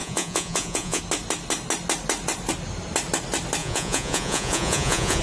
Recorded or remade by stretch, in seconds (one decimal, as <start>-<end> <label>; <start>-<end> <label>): 0.0-1.0 remade; 1.0-3.6 recorded; 3.6-5.2 remade